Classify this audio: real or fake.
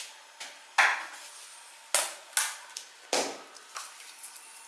real